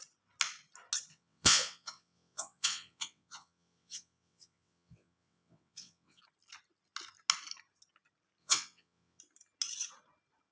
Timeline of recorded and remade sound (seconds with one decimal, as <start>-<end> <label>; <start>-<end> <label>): 0.0-1.1 recorded; 1.1-6.2 remade; 6.2-8.4 recorded; 8.4-9.2 remade; 9.2-10.5 recorded